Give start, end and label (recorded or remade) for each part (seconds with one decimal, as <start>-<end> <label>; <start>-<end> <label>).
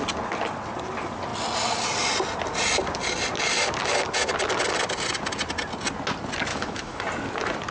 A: 0.0-6.5 recorded; 6.5-7.0 remade; 7.0-7.7 recorded